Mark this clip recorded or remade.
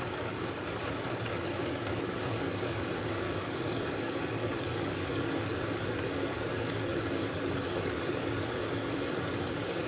remade